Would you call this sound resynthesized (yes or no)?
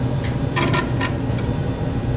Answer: no